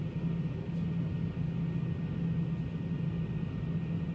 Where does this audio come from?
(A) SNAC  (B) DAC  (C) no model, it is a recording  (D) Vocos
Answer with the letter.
C